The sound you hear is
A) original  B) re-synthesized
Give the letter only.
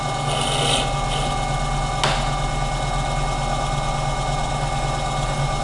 A